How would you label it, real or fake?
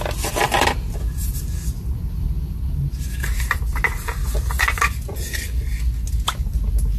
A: real